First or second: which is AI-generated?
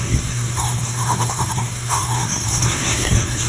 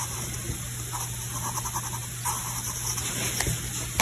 first